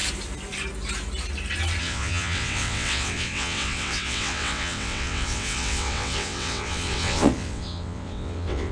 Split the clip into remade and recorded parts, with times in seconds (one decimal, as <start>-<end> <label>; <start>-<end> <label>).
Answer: 0.0-1.8 recorded; 1.8-8.7 remade